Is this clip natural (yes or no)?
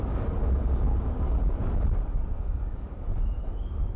yes